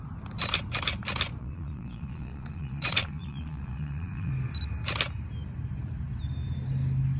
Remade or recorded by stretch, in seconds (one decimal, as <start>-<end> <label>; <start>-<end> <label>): 0.0-1.4 recorded; 1.4-4.3 remade; 4.3-7.2 recorded